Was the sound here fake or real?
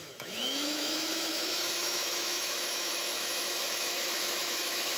fake